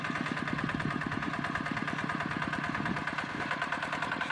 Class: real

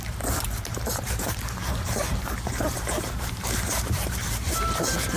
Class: fake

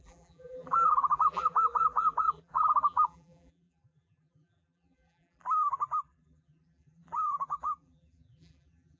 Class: fake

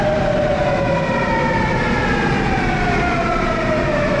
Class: real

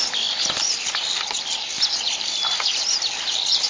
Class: fake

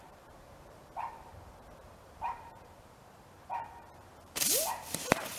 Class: fake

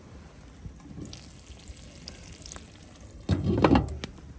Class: real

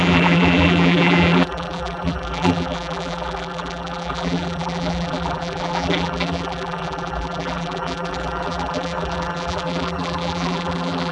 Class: fake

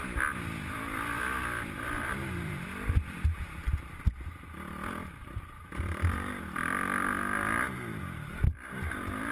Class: fake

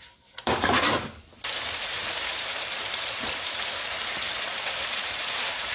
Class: fake